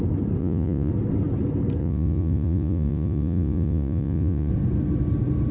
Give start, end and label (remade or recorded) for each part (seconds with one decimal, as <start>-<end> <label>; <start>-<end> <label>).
0.0-0.4 recorded; 0.4-0.9 remade; 0.9-1.8 recorded; 1.8-4.5 remade; 4.5-5.5 recorded